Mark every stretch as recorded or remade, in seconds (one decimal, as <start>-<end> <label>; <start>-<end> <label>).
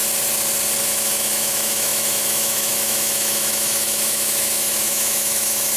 0.0-0.8 recorded; 0.8-5.8 remade